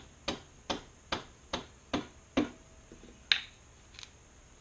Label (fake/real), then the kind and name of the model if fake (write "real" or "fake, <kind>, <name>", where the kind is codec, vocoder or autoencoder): real